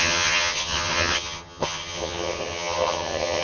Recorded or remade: remade